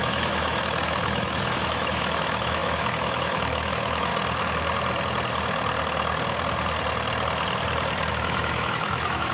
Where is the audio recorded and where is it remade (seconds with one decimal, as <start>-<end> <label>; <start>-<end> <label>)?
0.0-4.1 remade; 4.1-8.1 recorded; 8.1-9.3 remade